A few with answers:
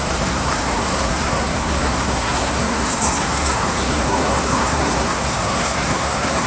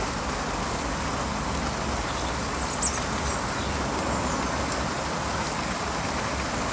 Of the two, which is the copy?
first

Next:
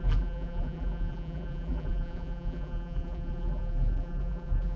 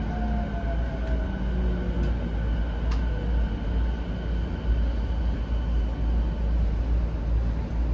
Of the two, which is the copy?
first